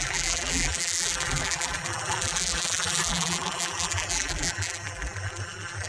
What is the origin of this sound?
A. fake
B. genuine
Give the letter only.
A